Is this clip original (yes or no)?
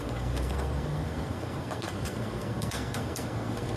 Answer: no